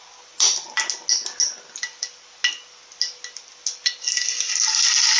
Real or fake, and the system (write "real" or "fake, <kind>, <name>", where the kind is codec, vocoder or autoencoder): real